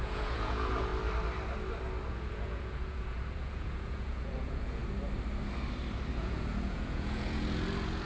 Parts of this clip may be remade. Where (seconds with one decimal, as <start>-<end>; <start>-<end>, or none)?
0.0-0.9; 2.1-4.8; 6.1-8.1